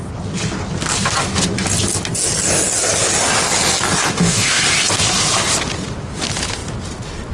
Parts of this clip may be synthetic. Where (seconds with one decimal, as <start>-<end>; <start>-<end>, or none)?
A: 4.1-4.6